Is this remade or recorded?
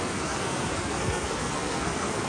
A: remade